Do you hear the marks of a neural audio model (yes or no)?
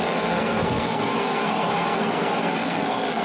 yes